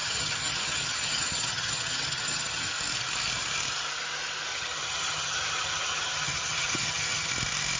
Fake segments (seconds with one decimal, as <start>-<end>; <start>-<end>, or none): 0.0-2.7; 4.5-7.3